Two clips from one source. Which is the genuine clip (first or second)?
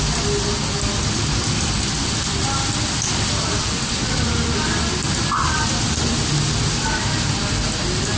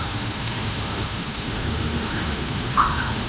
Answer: first